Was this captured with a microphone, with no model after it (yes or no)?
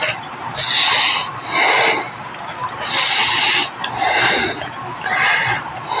yes